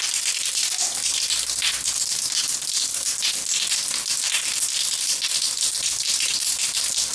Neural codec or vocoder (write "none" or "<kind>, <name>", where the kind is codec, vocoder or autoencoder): vocoder, BigVGAN v2